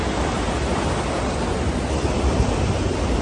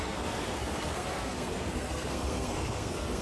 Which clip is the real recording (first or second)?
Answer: first